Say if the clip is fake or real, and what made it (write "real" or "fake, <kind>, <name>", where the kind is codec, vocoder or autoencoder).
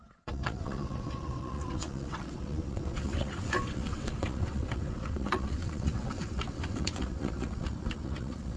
fake, vocoder, WaveNeXt